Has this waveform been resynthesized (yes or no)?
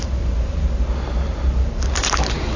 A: yes